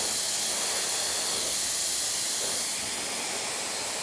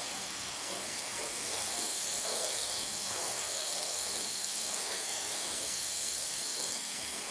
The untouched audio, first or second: first